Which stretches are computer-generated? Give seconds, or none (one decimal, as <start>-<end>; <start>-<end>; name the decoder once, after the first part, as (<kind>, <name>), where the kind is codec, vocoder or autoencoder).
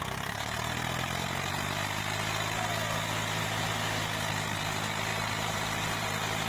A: 5.1-6.1 (vocoder, BigVGAN v2)